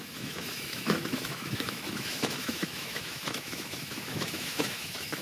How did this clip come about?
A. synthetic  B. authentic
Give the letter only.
A